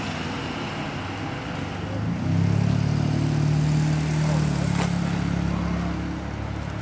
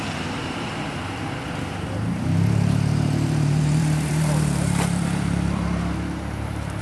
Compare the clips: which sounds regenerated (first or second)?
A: second